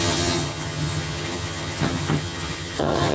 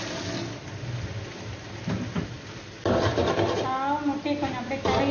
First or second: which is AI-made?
first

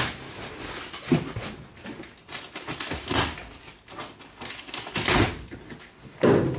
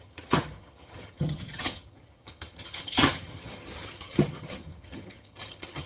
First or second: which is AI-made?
second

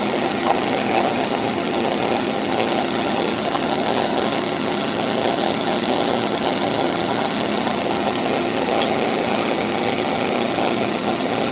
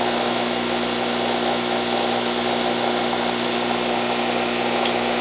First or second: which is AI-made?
first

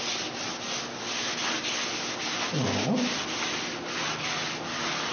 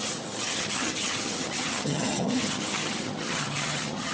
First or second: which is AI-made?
second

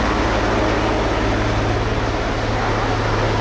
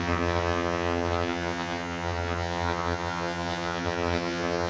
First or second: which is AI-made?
second